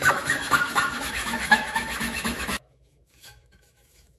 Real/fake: fake